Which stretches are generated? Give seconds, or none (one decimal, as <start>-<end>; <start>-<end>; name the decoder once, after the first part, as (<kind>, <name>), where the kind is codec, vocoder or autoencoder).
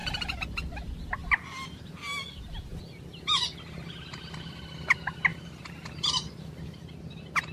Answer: 0.0-0.7 (vocoder, BigVGAN v2); 5.3-6.5